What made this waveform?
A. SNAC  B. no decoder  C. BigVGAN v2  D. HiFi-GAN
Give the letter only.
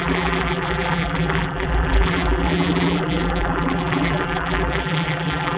C